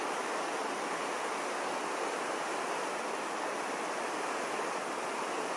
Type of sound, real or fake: real